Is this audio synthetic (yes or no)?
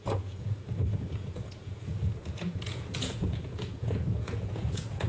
yes